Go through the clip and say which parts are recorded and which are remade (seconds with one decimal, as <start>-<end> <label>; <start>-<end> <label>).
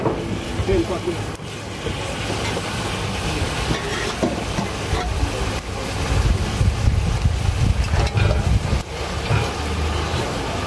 0.0-10.7 recorded